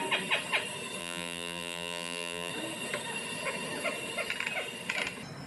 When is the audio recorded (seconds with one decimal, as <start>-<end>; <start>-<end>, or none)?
0.0-1.0; 2.5-5.5